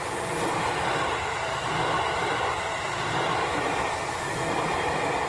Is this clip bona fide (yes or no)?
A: no